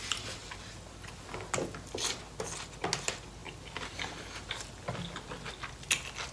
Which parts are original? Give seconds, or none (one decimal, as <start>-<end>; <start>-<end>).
0.0-6.3